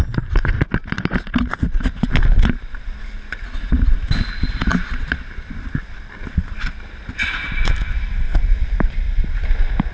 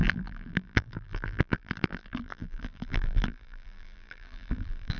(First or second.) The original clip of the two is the first